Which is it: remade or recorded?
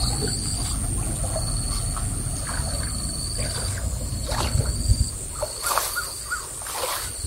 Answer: recorded